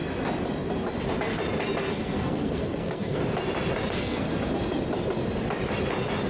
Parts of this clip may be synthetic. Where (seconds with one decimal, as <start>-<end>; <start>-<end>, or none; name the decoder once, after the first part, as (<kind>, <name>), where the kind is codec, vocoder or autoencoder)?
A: 1.9-3.2 (codec, SNAC); 3.9-4.3